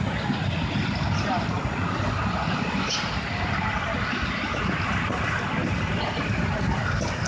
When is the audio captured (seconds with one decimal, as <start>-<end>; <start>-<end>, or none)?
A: 0.0-7.3